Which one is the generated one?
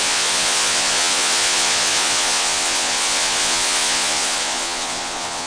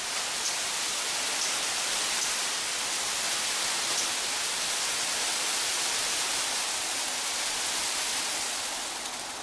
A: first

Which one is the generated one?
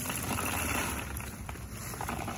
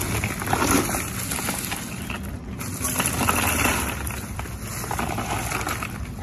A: first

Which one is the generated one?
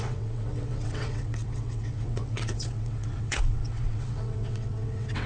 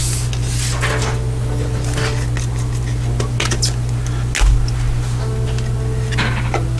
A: first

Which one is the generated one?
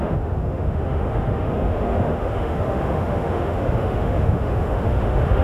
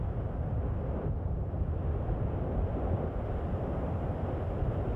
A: first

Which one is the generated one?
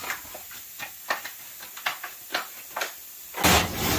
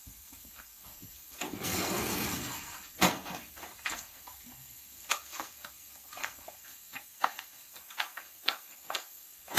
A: second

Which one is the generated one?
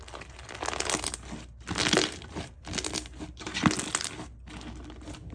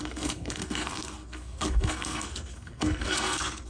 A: second